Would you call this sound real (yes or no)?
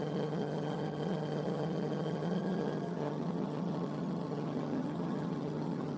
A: no